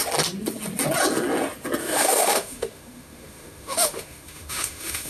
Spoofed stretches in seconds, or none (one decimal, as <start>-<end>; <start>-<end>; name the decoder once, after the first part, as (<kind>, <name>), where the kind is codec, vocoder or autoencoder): 1.8-5.1 (autoencoder, DAC-VAE)